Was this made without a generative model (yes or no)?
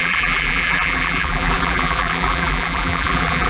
no